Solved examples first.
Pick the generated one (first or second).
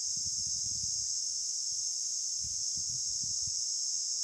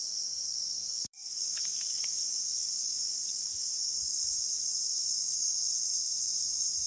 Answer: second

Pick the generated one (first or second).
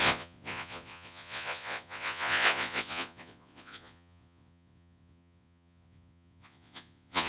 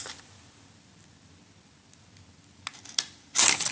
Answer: first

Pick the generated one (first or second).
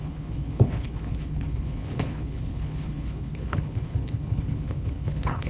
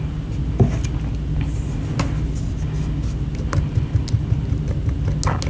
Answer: first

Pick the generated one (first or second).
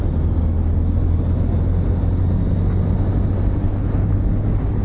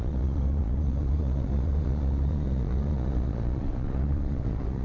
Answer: second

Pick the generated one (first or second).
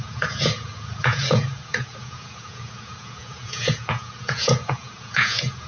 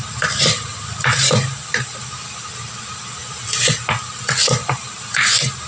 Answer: first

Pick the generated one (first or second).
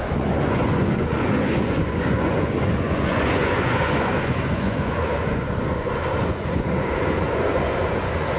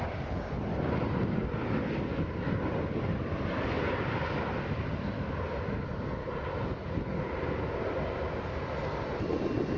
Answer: first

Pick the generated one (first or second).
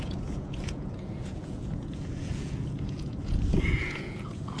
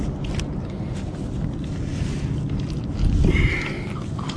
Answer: first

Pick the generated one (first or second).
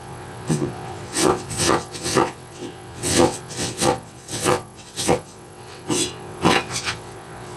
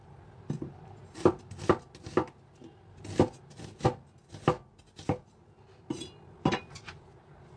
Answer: first